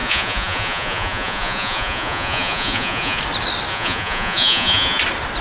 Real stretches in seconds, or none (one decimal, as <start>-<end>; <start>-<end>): 3.2-3.7; 5.0-5.4